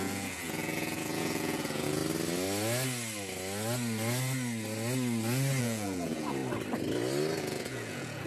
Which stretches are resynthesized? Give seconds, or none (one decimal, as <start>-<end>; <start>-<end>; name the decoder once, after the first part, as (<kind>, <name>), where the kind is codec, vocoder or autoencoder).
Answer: 0.0-2.0 (vocoder, Vocos); 5.6-6.4; 7.4-8.3